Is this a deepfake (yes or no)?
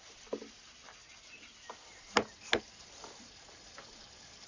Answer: no